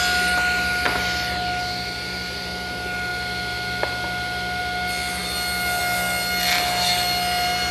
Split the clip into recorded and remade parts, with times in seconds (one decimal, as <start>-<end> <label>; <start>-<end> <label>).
0.0-7.7 recorded